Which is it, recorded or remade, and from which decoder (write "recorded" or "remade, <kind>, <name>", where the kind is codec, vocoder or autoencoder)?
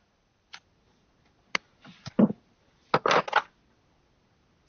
recorded